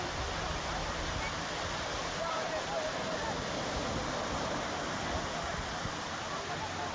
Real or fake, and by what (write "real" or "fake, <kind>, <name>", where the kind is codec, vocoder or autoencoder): real